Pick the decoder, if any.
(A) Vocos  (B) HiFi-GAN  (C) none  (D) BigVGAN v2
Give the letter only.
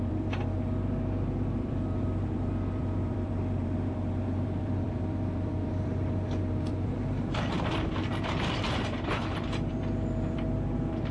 D